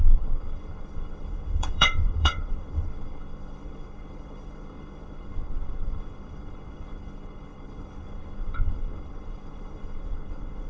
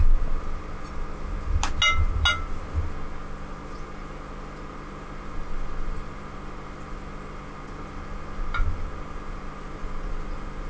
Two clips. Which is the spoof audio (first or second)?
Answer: first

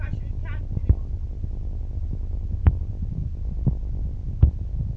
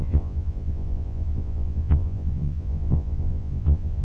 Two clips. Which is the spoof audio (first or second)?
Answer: second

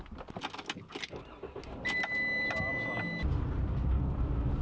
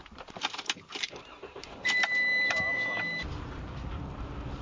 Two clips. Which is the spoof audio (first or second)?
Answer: second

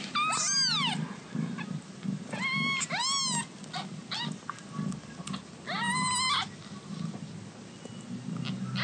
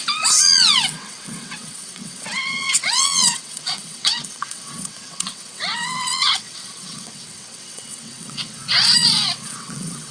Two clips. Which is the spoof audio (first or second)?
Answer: second